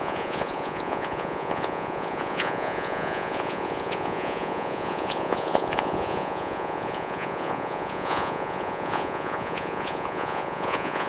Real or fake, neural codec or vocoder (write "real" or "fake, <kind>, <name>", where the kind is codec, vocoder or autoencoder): fake, vocoder, Vocos